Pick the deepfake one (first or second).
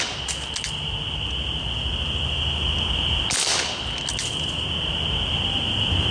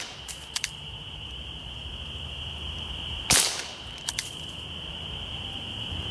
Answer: second